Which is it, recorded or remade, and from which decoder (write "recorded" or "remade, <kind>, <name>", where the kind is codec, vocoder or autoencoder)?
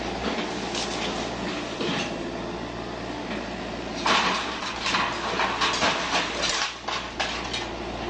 recorded